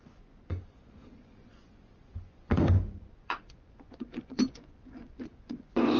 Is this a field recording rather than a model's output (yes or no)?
no